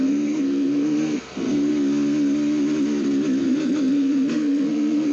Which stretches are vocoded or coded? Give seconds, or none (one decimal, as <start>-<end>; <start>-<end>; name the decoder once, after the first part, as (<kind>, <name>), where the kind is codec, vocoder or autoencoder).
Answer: 0.0-1.7 (codec, SNAC); 3.4-5.1

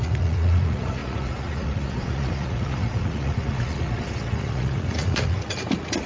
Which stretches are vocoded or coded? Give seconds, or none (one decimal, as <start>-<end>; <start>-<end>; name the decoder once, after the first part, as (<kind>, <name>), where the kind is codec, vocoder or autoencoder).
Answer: 0.0-6.1 (vocoder, Vocos)

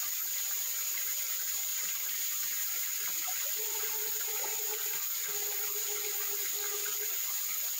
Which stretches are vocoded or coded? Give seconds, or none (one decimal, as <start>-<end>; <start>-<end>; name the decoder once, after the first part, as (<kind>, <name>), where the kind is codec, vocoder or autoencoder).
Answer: 0.0-4.5 (vocoder, BigVGAN v2); 5.6-6.7

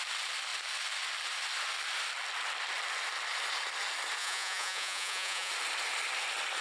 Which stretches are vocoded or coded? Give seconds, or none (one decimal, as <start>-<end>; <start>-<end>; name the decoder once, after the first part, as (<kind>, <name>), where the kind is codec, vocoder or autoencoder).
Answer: 4.2-5.5 (vocoder, Vocos)

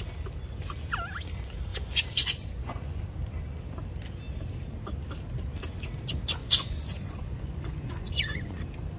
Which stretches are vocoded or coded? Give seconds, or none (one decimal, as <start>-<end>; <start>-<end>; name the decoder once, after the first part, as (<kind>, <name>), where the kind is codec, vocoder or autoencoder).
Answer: 1.7-3.0 (vocoder, Vocos); 6.4-8.6